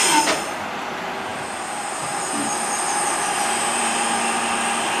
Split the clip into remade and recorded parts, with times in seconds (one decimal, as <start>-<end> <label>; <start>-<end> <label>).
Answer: 0.0-5.0 recorded